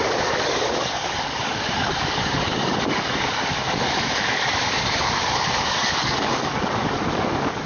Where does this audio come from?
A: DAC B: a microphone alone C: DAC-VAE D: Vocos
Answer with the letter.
A